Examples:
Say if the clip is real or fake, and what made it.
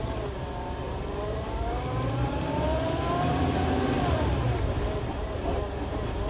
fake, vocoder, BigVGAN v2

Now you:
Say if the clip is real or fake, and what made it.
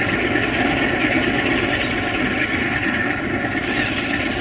real